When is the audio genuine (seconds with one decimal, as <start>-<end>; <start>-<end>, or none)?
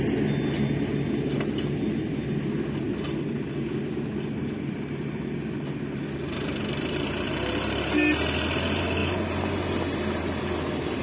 0.0-11.0